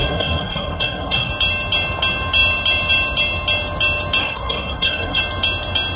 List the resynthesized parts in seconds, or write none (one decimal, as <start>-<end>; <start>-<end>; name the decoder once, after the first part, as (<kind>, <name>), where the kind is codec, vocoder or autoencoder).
0.0-1.3 (codec, SNAC); 4.2-5.2